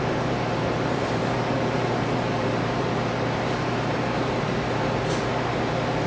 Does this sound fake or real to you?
fake